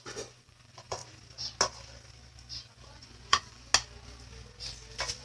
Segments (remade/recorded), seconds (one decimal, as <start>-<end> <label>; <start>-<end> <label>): 0.0-1.0 remade; 1.0-2.7 recorded; 2.7-3.7 remade; 3.7-5.2 recorded